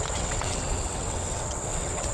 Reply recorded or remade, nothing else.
remade